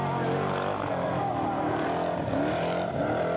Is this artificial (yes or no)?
no